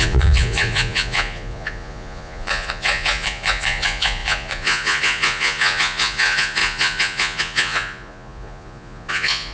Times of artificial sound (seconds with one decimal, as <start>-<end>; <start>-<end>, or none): 0.0-9.5

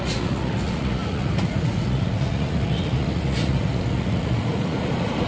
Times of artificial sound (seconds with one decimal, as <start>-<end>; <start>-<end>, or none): 0.0-5.3

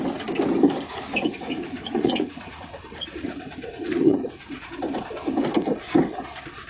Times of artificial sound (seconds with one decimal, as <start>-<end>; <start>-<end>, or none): 1.5-4.7

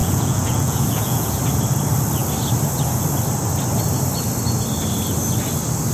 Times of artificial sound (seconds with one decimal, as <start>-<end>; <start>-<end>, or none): 0.0-1.4

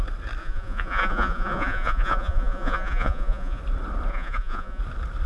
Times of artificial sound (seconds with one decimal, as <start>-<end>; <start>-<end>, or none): 0.4-3.6; 4.1-4.8